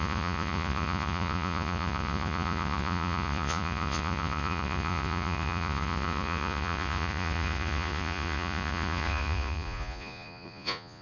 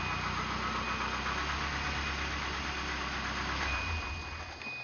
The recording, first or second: second